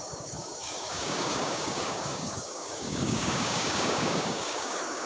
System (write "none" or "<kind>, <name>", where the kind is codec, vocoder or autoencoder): codec, DAC